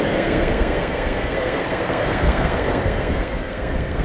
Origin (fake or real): fake